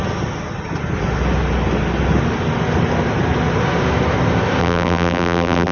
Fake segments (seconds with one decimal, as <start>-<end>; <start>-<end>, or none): 4.6-5.7